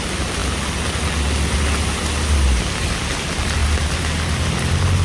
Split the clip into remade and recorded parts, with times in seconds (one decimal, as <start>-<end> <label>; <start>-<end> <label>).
0.0-5.0 recorded